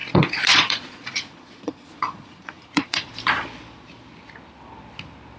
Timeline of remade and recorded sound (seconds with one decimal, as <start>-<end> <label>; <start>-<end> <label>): 0.0-3.1 remade; 3.1-5.4 recorded